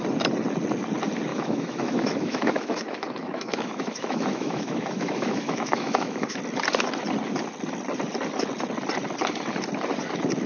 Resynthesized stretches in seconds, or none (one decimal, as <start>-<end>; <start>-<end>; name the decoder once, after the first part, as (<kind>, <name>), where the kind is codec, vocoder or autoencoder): 1.3-6.4 (autoencoder, DAC-VAE)